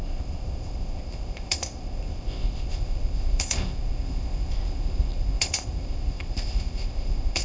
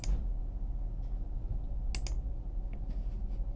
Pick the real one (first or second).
second